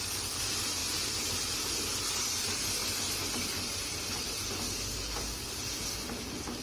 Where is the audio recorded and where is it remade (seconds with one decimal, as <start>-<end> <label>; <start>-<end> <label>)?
0.0-6.6 recorded